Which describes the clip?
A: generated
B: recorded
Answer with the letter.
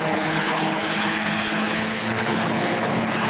A